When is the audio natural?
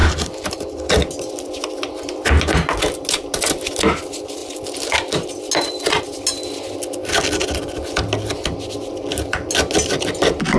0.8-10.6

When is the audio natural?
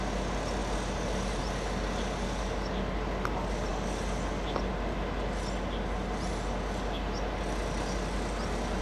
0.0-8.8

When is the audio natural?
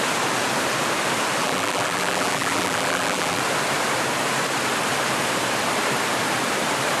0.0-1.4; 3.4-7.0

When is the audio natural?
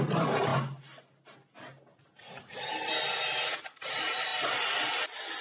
0.5-2.3; 4.3-5.4